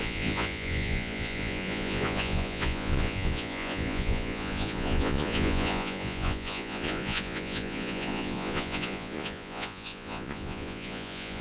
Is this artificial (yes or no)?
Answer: yes